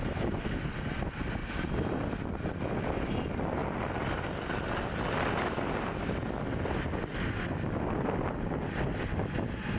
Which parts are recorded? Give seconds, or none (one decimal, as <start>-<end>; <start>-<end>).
0.0-9.8